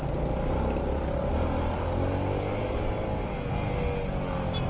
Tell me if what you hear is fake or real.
real